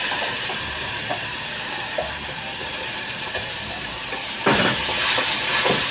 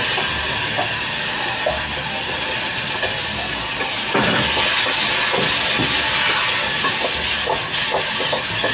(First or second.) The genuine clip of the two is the second